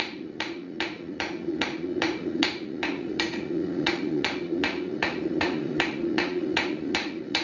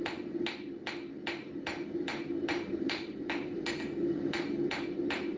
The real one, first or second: second